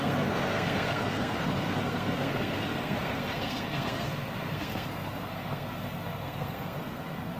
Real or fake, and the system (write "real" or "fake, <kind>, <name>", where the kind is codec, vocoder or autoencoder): fake, codec, SNAC